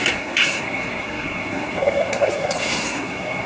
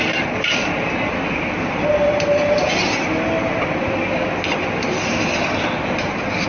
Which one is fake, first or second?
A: first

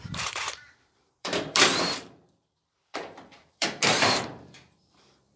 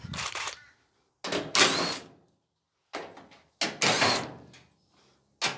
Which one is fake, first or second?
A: first